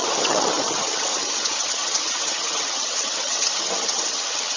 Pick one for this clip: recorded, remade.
remade